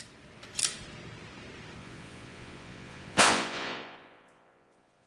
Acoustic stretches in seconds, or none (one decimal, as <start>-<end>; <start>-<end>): 0.0-1.8

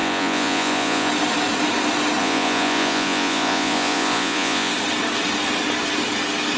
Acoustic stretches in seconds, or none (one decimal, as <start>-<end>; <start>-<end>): 1.1-2.2; 4.7-6.6

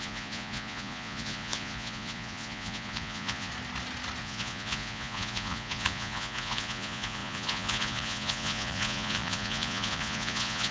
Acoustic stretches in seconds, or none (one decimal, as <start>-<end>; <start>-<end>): 3.5-4.2

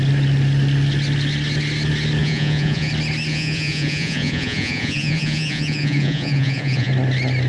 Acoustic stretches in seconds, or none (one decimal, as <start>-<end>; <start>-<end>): 0.0-2.2; 2.9-3.3; 6.9-7.5